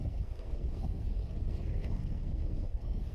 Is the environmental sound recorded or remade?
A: remade